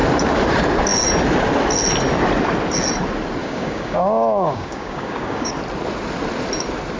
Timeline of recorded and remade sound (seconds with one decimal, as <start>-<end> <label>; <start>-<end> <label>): 0.0-3.4 recorded; 3.4-5.5 remade; 5.5-7.0 recorded